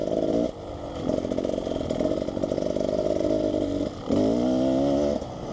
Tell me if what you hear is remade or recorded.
recorded